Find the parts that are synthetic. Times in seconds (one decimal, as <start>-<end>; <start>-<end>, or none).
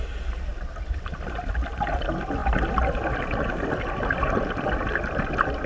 0.5-1.5; 2.4-3.7; 4.2-4.9